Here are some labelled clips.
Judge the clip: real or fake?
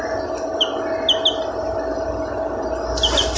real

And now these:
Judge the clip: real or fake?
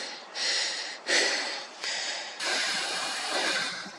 fake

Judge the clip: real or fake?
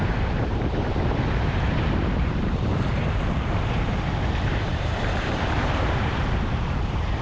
fake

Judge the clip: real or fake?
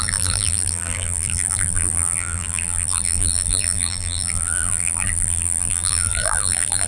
fake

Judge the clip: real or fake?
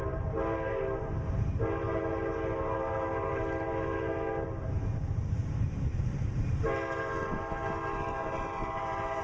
fake